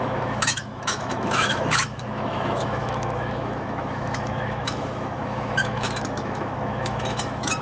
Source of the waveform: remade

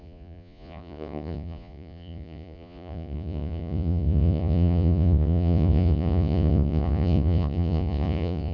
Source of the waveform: remade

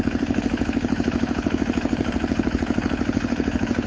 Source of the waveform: remade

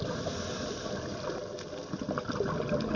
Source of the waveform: recorded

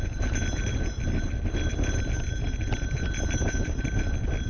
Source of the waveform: recorded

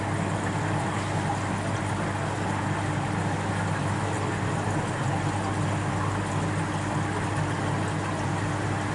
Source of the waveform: recorded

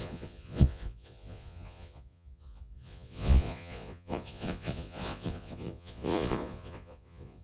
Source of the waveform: remade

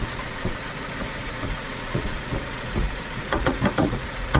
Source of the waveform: remade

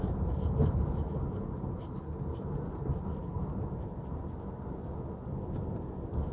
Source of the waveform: recorded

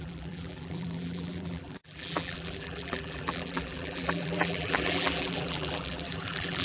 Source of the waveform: remade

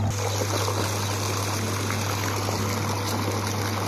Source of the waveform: recorded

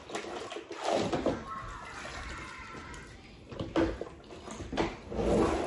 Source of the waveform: recorded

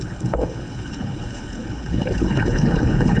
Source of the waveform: remade